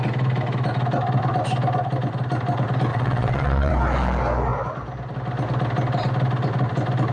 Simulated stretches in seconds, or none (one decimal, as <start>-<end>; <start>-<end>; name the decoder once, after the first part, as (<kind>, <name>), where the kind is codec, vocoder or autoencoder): 2.9-3.7 (vocoder, WaveNeXt)